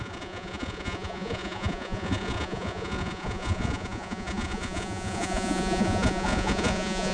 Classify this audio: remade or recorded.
remade